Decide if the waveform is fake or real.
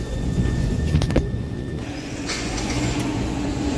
fake